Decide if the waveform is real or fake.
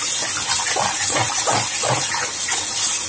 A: real